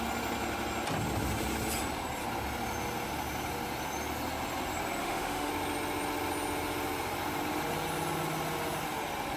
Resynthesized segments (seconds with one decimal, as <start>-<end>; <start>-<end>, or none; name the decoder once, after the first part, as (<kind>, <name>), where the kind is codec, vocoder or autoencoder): 5.0-5.5 (autoencoder, DAC-VAE)